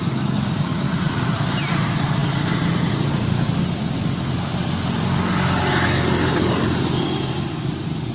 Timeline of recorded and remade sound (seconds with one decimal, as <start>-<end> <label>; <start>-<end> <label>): 0.0-0.7 recorded; 0.7-1.2 remade; 1.2-8.1 recorded